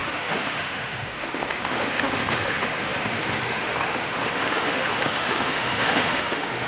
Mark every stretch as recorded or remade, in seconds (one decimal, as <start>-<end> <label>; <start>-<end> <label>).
0.0-6.7 remade